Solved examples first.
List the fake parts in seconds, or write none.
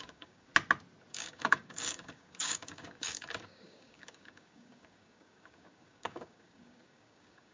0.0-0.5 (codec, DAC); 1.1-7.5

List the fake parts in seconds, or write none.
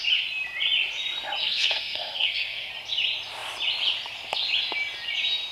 1.4-2.7 (codec, SNAC)